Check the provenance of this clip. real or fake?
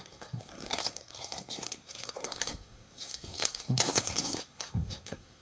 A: fake